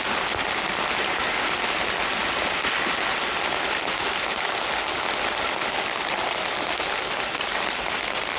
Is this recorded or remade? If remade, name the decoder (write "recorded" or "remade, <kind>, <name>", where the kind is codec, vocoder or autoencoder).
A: recorded